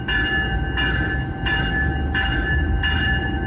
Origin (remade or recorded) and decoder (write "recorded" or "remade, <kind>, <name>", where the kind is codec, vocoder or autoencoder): recorded